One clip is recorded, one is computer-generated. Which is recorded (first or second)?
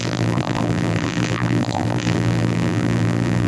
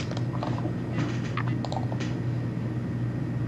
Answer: second